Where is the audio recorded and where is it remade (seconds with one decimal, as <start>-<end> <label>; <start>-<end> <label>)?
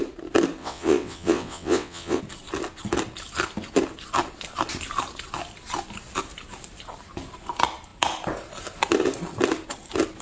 0.0-0.6 recorded; 0.6-2.2 remade; 2.2-10.2 recorded